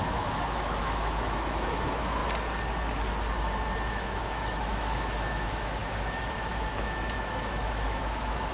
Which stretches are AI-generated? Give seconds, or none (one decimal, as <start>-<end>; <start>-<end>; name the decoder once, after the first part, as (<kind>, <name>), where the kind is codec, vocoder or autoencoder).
0.0-2.2 (autoencoder, DAC-VAE); 3.9-8.5